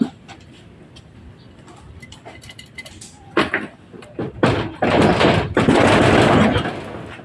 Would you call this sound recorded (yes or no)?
yes